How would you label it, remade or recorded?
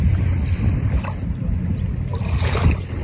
recorded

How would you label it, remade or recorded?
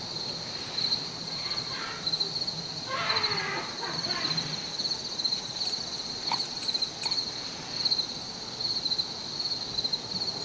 recorded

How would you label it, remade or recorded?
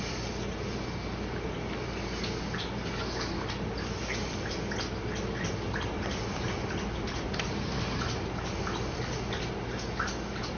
recorded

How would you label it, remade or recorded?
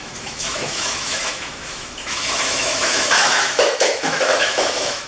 remade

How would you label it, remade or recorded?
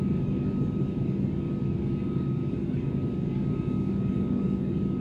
remade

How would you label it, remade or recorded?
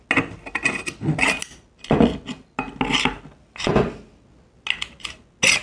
recorded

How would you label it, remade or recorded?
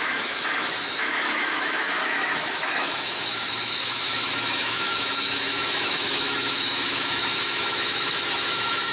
remade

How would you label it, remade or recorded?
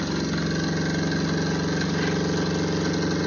recorded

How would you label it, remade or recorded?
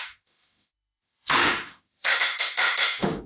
remade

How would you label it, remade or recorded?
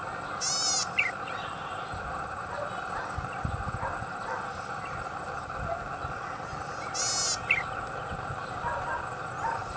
recorded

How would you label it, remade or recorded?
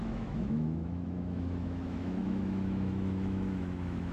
remade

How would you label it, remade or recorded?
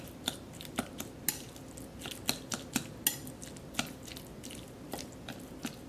recorded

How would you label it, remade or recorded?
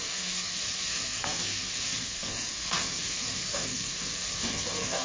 remade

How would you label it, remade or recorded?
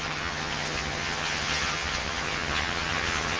remade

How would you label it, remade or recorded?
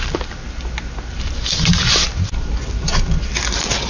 recorded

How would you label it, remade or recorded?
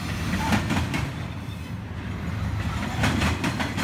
recorded